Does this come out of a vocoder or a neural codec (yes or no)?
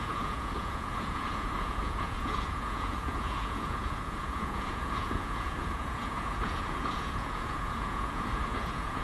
yes